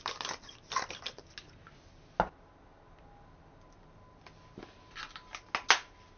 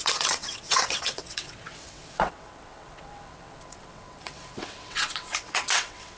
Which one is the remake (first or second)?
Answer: second